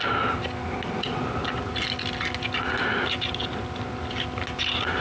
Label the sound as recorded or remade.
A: recorded